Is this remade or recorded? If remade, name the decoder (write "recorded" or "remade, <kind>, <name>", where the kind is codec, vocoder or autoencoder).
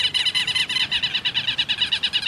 recorded